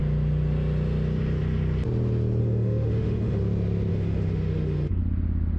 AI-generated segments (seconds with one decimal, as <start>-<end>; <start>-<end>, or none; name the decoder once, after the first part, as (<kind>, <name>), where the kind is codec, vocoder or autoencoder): 2.4-3.4 (autoencoder, DAC-VAE); 3.9-5.0